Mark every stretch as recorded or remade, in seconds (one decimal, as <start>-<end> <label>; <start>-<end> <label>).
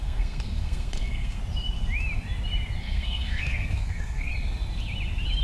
0.0-1.4 remade; 1.4-2.8 recorded; 2.8-4.3 remade; 4.3-5.4 recorded